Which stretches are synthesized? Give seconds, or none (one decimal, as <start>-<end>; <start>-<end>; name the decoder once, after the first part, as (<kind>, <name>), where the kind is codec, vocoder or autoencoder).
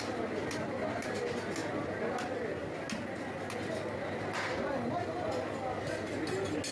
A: none